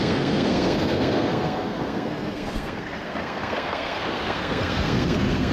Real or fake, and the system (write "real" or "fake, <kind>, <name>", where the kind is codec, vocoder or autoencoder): fake, codec, SNAC